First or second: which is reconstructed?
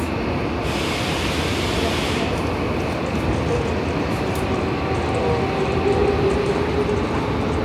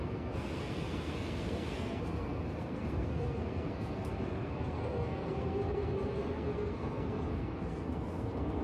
second